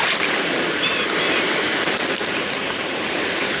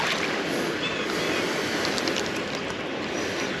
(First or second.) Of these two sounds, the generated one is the first